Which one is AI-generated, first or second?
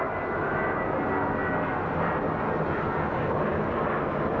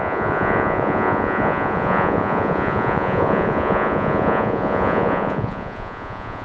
second